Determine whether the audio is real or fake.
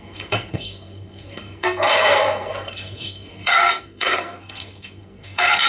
fake